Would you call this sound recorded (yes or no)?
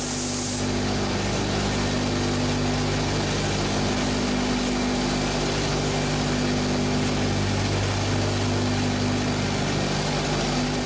yes